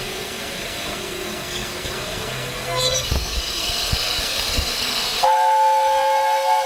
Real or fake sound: fake